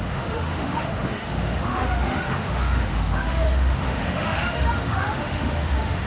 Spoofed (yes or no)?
yes